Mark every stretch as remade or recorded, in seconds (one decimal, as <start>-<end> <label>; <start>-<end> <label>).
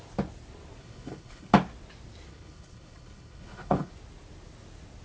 0.0-0.8 recorded; 0.8-1.5 remade; 1.5-2.3 recorded; 2.3-3.9 remade; 3.9-5.0 recorded